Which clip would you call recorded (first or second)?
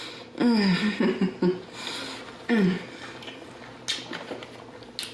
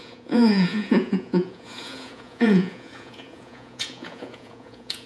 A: first